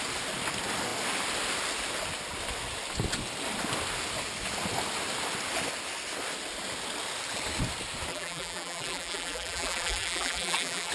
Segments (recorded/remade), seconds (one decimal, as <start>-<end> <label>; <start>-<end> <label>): 0.0-8.1 recorded; 8.1-10.9 remade